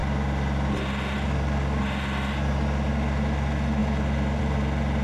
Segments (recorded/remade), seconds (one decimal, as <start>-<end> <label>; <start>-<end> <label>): 0.0-5.0 recorded